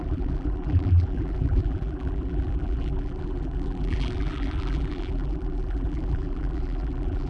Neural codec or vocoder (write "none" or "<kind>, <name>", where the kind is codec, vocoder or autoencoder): vocoder, BigVGAN v2